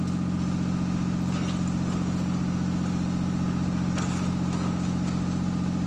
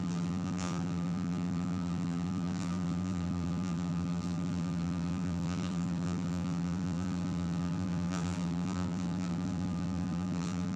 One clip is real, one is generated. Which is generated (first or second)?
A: second